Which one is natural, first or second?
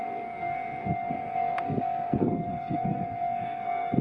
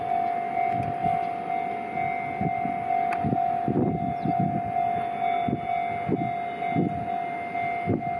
second